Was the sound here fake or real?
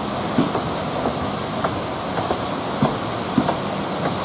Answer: real